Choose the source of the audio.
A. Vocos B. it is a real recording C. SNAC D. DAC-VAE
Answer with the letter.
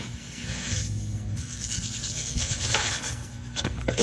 C